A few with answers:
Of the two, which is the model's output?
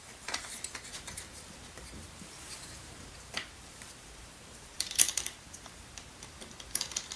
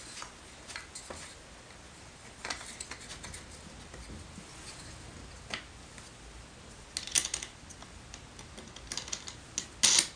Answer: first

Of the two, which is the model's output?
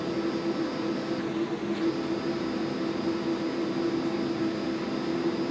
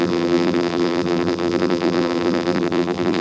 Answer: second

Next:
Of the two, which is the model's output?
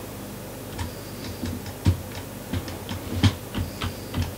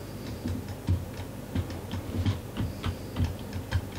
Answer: second